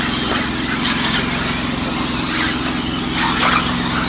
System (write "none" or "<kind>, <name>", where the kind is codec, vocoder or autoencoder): none